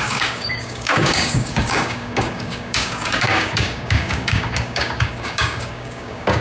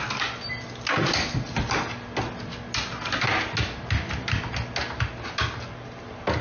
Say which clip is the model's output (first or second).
first